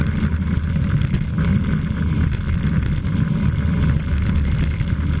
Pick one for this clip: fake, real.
real